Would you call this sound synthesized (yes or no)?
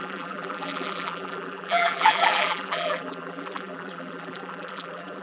yes